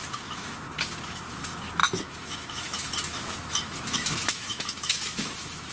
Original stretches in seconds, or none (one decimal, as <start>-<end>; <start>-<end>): none